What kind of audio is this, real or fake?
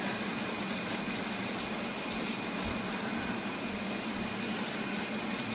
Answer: real